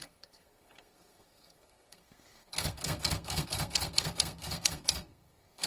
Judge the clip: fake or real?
fake